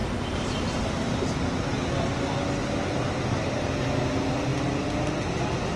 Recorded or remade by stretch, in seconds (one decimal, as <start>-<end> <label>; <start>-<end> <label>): 0.0-5.8 recorded